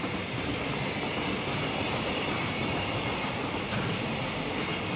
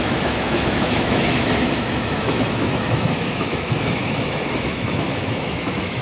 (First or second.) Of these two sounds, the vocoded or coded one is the second